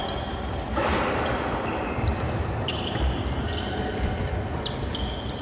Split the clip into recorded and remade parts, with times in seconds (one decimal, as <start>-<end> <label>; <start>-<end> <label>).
0.0-5.4 remade